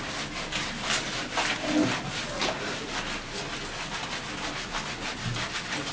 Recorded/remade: recorded